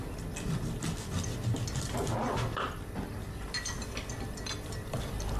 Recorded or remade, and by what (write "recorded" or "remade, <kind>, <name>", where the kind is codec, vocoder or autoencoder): recorded